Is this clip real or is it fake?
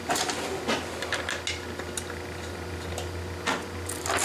real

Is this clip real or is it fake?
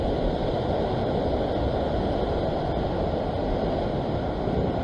real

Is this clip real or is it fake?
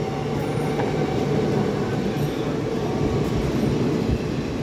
real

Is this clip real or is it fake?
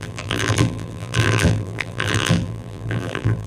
fake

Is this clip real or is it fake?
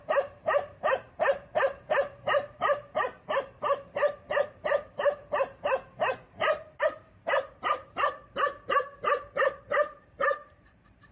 fake